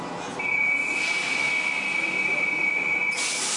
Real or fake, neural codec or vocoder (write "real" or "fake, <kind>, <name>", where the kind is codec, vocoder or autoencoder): real